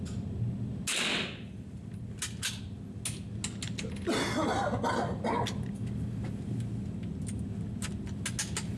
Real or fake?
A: real